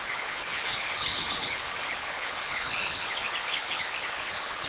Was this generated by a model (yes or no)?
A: yes